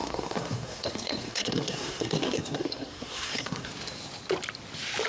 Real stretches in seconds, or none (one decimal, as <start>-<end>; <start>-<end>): 3.7-5.1